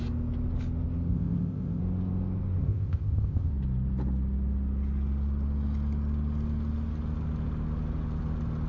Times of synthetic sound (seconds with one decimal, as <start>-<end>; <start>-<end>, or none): 1.1-1.8; 2.6-3.5

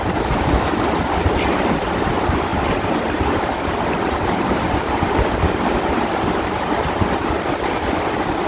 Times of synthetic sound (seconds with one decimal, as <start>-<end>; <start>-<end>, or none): none

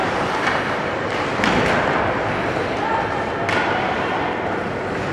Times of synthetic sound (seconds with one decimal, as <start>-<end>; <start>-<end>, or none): 0.0-0.6

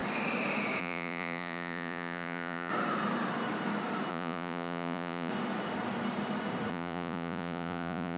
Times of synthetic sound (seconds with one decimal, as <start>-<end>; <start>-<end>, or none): 0.8-2.7; 4.1-5.3; 6.7-8.2

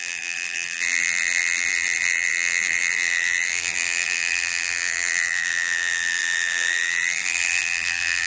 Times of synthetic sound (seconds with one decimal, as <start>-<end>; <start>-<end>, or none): 0.0-8.3

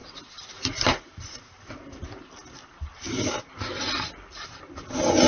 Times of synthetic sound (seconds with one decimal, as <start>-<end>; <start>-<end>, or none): none

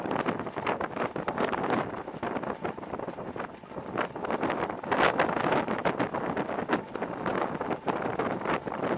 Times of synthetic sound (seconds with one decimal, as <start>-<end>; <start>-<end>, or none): none

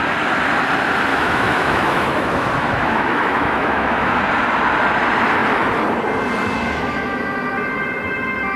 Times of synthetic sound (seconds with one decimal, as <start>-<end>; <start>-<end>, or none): 1.1-4.2